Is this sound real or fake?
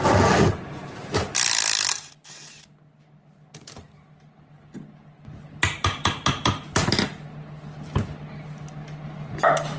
real